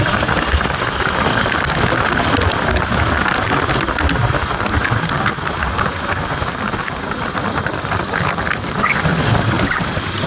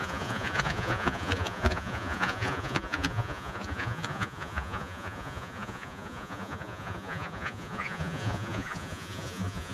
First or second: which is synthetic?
second